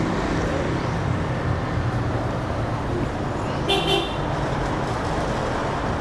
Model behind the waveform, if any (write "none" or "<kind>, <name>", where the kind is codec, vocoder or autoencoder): none